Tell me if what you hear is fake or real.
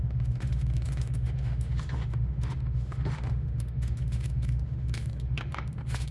fake